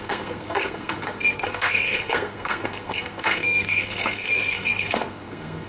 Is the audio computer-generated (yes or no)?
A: yes